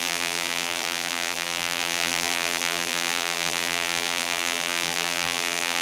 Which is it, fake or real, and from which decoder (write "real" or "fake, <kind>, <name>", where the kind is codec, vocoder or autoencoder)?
fake, vocoder, BigVGAN v2